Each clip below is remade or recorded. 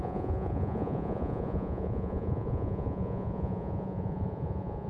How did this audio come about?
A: remade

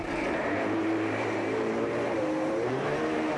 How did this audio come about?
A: remade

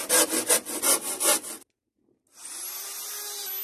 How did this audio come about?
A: recorded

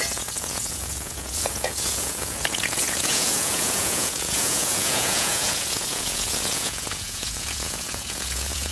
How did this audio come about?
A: remade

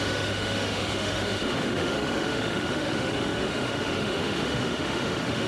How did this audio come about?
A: remade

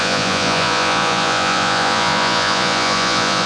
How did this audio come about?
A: remade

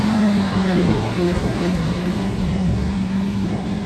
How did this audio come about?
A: remade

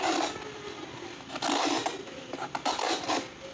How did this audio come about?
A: recorded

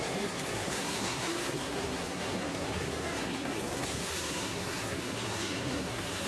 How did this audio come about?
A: remade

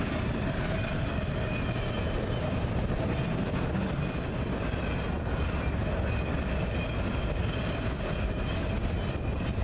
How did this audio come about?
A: recorded